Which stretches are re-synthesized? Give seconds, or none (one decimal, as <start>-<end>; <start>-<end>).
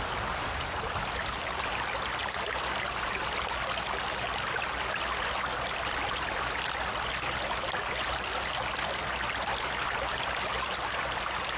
2.2-4.2